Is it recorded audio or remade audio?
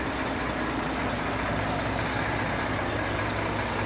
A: recorded